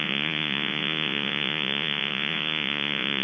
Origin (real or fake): fake